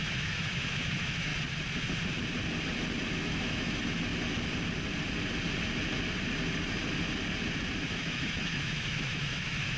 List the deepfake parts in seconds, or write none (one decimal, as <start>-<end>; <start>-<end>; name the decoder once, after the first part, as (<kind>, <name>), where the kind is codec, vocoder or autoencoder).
0.0-1.3 (autoencoder, DAC-VAE); 3.1-4.1; 7.8-9.8